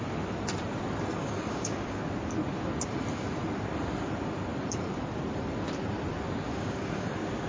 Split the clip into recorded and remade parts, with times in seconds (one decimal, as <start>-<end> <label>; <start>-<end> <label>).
0.0-1.2 recorded; 1.2-2.0 remade; 2.0-6.5 recorded; 6.5-7.1 remade; 7.1-7.5 recorded

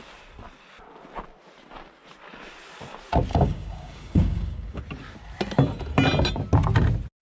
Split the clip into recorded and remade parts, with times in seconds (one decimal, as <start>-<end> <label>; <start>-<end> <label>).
0.0-3.3 recorded; 3.3-4.8 remade; 4.8-7.2 recorded